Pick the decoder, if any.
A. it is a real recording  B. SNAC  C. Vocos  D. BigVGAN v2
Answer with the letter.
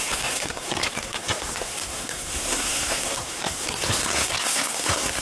B